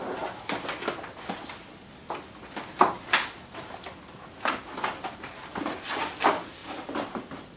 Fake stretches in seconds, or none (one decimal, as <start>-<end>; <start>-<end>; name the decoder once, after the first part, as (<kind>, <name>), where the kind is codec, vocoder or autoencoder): 6.6-7.6 (vocoder, BigVGAN v2)